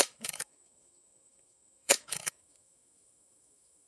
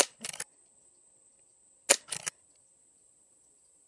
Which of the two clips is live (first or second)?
second